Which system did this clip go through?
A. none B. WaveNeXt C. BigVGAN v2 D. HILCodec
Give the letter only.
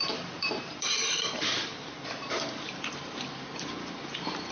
C